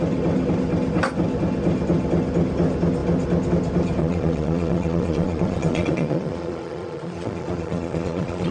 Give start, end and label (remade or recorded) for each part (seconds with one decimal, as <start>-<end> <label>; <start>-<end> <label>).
0.0-4.0 recorded; 4.0-8.5 remade